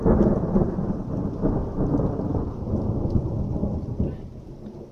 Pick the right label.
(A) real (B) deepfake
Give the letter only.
A